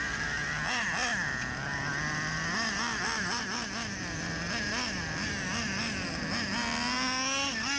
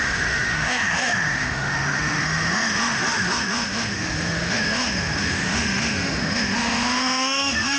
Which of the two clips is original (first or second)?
first